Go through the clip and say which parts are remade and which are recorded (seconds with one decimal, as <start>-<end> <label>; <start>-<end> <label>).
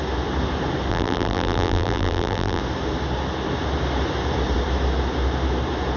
0.0-0.9 recorded; 0.9-2.6 remade; 2.6-6.0 recorded